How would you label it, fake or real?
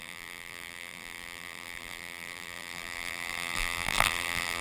fake